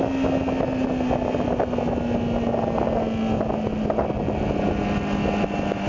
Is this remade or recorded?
recorded